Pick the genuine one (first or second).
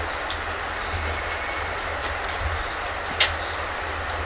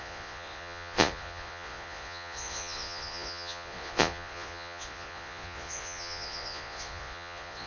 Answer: first